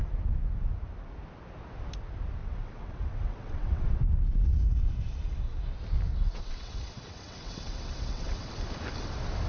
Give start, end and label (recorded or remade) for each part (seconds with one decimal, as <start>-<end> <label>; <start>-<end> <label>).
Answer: 0.0-2.4 recorded; 2.4-4.0 remade; 4.0-6.1 recorded; 6.1-8.5 remade; 8.5-9.5 recorded